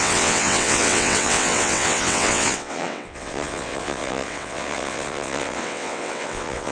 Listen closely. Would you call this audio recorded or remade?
remade